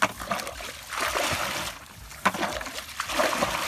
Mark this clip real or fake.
real